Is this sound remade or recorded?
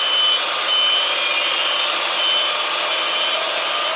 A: recorded